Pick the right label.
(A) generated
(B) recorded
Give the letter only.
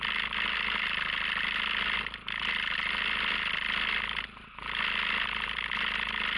B